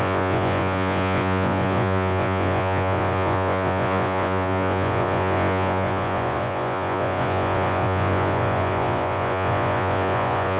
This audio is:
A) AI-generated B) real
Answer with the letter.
A